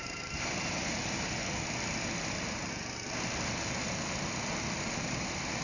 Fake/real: real